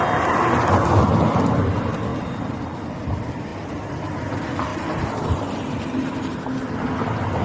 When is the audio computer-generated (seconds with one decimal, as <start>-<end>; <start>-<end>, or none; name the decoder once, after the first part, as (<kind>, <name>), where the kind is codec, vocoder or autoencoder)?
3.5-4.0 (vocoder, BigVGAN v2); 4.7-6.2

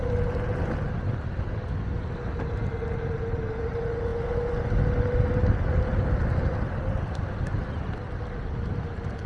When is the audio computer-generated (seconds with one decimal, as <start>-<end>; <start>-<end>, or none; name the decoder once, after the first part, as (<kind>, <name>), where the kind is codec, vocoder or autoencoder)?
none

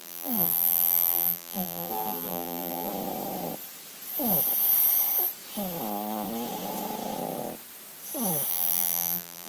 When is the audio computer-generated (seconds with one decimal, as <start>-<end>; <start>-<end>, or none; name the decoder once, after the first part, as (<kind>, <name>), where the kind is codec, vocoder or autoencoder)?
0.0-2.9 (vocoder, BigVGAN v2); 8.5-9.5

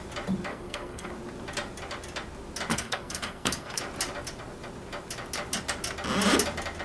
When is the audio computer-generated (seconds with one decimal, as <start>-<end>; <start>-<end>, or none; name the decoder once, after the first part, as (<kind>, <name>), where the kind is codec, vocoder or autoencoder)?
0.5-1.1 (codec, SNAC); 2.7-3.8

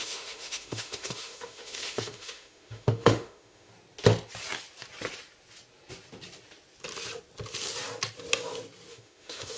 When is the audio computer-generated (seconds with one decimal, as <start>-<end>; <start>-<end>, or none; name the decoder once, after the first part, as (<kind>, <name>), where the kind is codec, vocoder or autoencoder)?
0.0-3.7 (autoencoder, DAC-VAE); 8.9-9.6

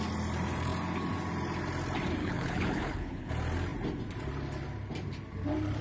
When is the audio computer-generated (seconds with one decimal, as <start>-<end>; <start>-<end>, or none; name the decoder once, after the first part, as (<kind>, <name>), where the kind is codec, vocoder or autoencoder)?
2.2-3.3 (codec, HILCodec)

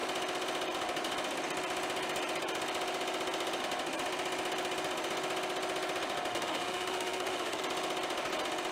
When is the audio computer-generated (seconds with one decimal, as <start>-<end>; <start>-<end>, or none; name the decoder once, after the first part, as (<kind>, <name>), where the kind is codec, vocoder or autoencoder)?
6.3-7.6 (autoencoder, DAC-VAE)

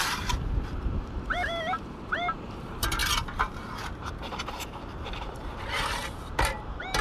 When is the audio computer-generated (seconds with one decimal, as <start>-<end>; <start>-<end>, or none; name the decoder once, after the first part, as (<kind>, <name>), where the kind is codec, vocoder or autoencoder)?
0.0-7.0 (vocoder, BigVGAN v2)